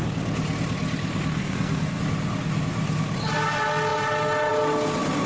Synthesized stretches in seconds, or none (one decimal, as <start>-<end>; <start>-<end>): 1.4-2.0